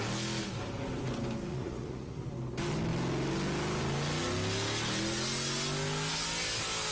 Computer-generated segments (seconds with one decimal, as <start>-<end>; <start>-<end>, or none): 1.5-2.3